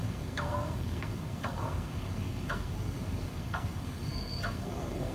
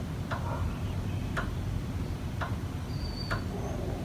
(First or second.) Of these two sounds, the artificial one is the first